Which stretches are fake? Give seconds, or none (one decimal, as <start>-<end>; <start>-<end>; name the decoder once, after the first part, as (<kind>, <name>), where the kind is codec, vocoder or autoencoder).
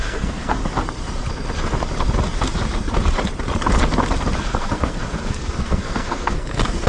0.0-0.6 (codec, SNAC); 4.4-6.9